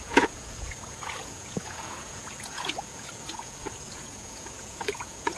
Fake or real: fake